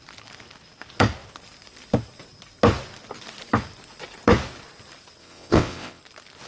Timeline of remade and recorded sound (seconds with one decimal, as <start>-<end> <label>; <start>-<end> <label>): 0.0-5.2 recorded; 5.2-6.0 remade; 6.0-6.5 recorded

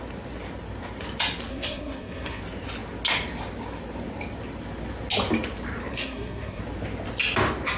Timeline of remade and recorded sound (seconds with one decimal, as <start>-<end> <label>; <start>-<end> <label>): 0.0-1.5 recorded; 1.5-2.4 remade; 2.4-5.9 recorded; 5.9-6.6 remade; 6.6-7.8 recorded

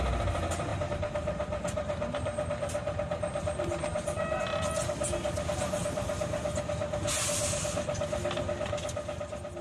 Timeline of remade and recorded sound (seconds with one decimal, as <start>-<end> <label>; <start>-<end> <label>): 0.0-0.7 recorded; 0.7-4.4 remade; 4.4-9.6 recorded